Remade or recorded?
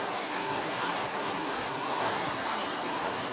remade